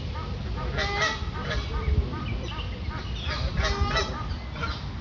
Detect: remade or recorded recorded